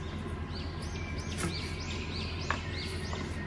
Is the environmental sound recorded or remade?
recorded